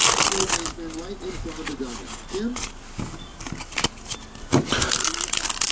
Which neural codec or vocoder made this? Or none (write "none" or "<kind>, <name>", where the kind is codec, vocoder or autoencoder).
none